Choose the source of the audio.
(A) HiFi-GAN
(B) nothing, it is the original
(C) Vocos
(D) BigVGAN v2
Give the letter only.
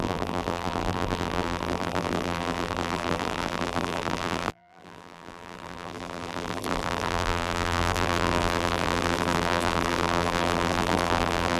D